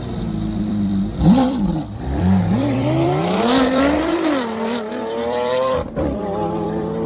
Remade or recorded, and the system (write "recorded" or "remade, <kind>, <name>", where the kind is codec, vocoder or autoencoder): remade, vocoder, BigVGAN v2